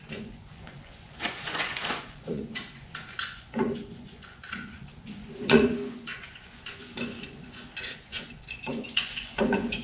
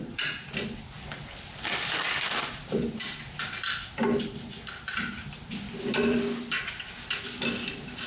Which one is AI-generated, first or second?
first